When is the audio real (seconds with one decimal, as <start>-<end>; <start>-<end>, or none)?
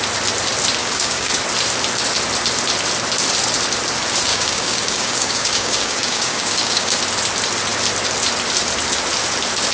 0.0-0.8; 1.3-4.3; 7.0-9.7